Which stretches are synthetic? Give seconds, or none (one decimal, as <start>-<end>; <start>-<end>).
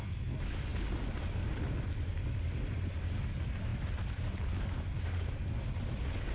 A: none